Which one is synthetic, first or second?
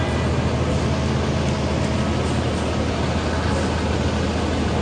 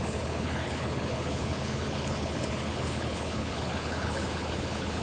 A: second